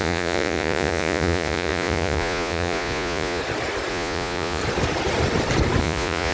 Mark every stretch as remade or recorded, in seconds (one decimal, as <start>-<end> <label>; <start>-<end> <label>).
0.0-3.4 remade; 3.4-3.9 recorded; 3.9-4.6 remade; 4.6-5.8 recorded; 5.8-6.3 remade